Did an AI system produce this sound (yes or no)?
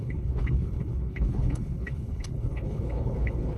yes